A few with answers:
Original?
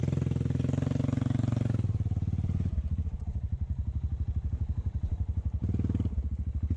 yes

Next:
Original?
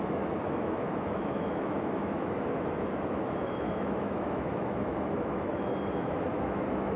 no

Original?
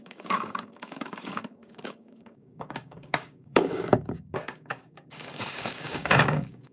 no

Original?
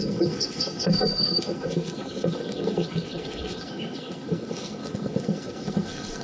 no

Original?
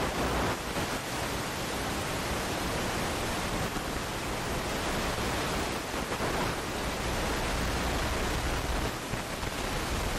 yes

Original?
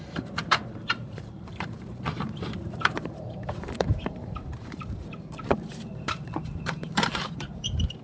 no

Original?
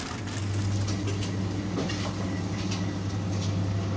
yes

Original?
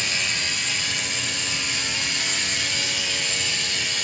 yes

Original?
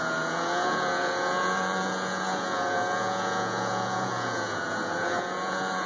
no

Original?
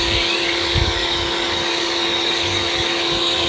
no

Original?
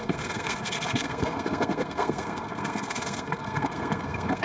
no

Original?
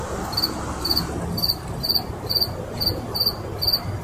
yes